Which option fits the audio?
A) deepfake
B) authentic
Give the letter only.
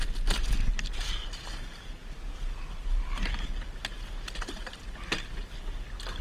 B